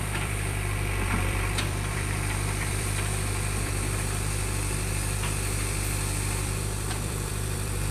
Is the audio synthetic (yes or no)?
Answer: yes